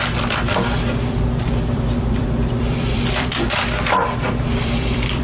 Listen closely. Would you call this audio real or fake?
fake